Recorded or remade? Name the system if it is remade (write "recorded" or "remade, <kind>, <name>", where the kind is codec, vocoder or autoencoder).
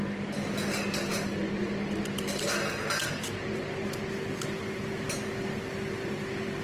recorded